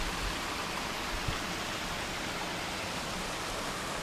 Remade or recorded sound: recorded